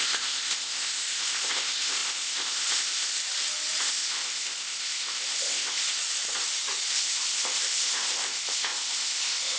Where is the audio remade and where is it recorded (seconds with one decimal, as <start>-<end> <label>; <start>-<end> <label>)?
0.0-3.2 remade; 3.2-3.8 recorded; 3.8-6.0 remade; 6.0-6.9 recorded; 6.9-9.6 remade